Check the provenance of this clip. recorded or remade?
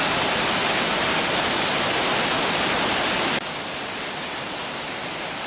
recorded